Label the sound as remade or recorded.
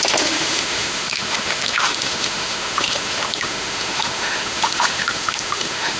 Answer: remade